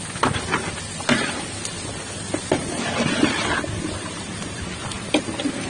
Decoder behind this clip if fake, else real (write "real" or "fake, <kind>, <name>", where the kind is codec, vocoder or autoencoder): real